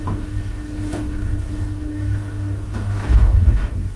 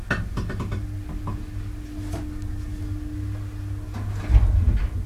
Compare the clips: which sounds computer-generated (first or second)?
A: first